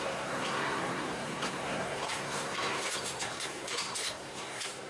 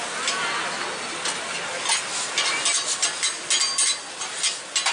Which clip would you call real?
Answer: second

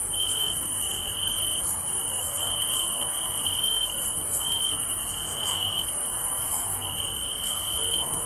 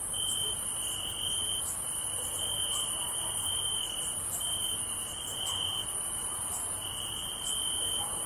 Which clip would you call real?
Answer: second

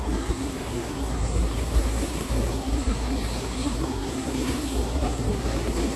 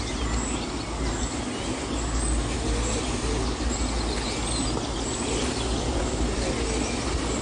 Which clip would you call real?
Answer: second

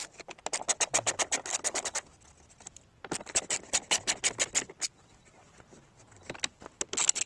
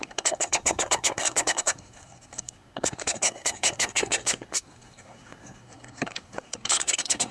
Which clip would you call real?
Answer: first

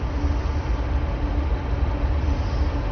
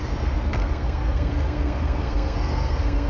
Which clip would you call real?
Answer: first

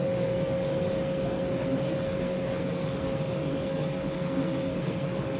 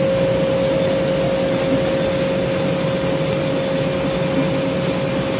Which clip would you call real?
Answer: second